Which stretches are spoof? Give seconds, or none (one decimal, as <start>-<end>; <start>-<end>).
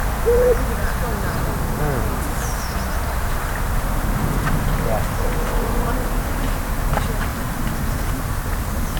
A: 7.3-8.1